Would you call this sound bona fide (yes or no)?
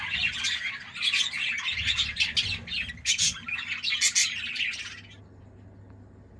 yes